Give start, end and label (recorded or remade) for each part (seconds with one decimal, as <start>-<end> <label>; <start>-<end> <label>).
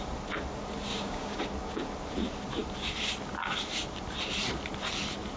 0.0-0.9 recorded; 0.9-1.4 remade; 1.4-5.4 recorded